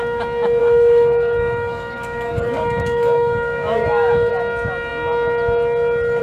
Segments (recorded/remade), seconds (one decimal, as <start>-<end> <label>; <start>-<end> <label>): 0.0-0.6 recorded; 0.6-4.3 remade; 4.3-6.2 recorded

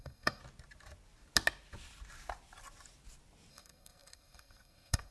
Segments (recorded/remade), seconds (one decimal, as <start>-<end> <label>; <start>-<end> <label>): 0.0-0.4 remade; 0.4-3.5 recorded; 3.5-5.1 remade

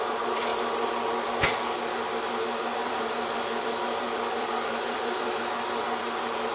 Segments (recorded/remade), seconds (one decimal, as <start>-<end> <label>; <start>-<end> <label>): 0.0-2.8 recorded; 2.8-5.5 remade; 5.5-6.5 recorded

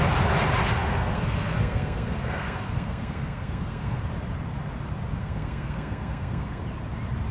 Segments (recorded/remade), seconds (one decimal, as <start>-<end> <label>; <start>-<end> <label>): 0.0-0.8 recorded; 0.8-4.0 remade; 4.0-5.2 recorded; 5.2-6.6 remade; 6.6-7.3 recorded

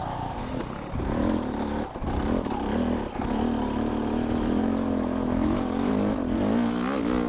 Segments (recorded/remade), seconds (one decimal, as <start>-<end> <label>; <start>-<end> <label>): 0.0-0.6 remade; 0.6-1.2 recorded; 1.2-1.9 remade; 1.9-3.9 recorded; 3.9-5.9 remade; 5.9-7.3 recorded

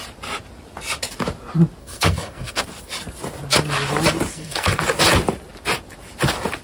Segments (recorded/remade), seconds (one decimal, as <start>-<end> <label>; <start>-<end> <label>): 0.0-1.8 recorded; 1.8-2.6 remade; 2.6-4.3 recorded; 4.3-4.8 remade; 4.8-6.6 recorded

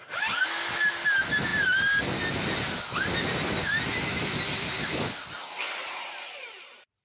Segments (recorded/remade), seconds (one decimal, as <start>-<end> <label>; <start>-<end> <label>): 0.0-7.0 recorded

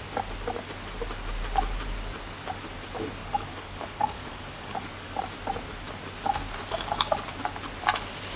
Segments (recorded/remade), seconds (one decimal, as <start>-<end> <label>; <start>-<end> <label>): 0.0-3.2 recorded; 3.2-5.2 remade; 5.2-8.4 recorded